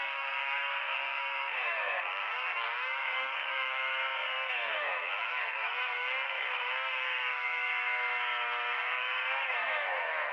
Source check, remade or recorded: remade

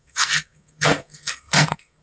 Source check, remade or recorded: remade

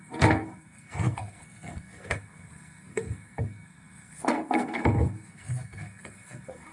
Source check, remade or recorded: remade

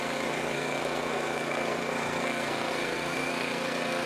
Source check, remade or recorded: remade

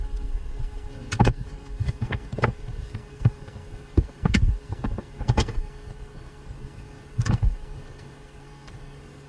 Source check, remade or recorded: remade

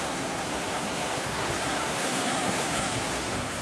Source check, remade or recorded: remade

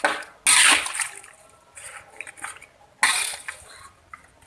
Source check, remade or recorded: recorded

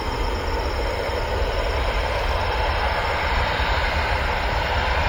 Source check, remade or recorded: recorded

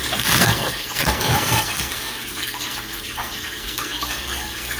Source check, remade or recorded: remade